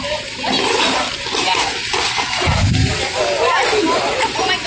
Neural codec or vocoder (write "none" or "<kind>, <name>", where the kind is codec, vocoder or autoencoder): none